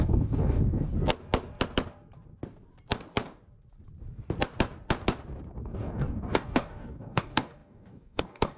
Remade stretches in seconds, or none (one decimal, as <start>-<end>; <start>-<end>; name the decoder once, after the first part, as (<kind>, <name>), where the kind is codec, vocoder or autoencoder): 0.0-0.9 (codec, DAC); 5.6-8.6